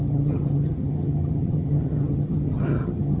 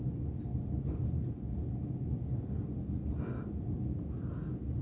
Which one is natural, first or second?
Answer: second